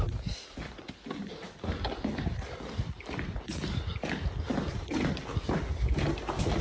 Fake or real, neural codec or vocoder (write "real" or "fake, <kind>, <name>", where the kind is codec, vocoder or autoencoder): real